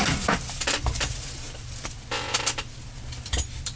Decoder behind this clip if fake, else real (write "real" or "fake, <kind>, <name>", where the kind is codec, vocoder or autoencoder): fake, vocoder, BigVGAN v2